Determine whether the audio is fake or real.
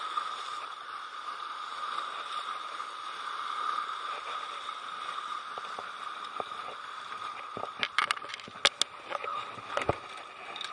real